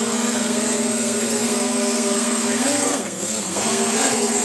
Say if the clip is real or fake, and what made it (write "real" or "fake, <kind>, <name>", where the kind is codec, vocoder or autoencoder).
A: fake, codec, SNAC